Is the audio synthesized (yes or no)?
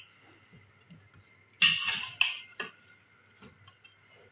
no